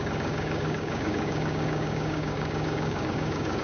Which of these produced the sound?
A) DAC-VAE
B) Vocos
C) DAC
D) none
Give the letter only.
C